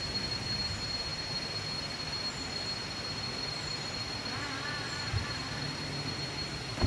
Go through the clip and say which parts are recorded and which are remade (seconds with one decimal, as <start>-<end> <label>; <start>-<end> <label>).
0.0-6.9 recorded